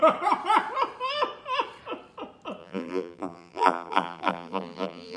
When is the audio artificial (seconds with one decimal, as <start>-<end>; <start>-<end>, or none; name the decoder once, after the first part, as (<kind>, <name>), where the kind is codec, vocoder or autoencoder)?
2.6-5.2 (vocoder, BigVGAN v2)